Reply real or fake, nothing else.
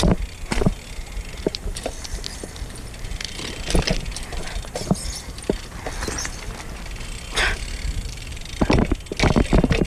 real